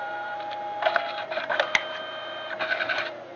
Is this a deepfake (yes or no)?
yes